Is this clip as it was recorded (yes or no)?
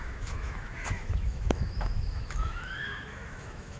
no